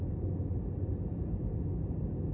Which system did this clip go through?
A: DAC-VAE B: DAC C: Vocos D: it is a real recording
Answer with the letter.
D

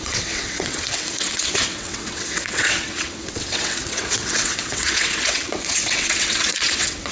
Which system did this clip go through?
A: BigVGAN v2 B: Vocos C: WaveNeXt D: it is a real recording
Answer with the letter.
C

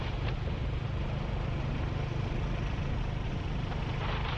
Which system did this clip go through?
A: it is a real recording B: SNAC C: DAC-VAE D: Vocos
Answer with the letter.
A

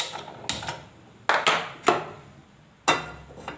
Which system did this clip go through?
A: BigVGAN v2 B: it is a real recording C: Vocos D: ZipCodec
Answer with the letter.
B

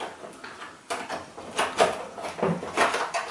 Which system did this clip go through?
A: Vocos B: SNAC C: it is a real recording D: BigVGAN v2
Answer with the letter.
C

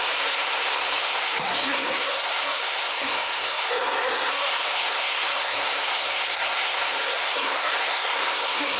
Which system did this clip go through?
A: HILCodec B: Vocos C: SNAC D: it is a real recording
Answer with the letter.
C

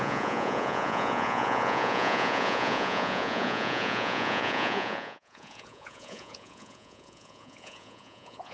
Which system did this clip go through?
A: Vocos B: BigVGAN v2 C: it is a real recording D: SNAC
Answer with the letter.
A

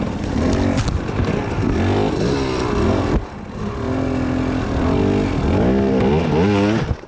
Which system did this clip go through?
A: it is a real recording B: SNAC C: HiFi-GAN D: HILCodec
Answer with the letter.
A